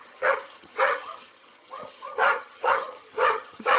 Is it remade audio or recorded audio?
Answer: remade